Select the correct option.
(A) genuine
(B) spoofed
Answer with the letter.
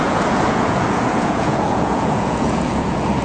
B